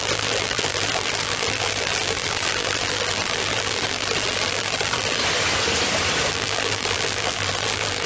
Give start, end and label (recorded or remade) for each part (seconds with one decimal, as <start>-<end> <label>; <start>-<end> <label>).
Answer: 0.0-5.2 remade; 5.2-6.3 recorded; 6.3-8.1 remade